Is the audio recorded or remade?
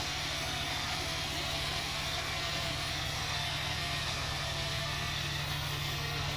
remade